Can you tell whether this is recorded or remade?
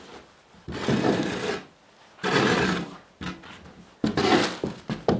recorded